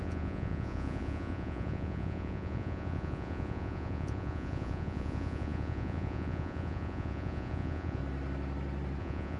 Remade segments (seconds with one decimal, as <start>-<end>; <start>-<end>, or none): 0.0-8.0; 9.0-9.4